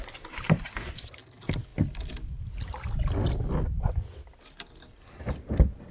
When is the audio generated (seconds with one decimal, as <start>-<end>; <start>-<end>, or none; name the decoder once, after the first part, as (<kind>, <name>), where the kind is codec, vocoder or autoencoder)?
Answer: none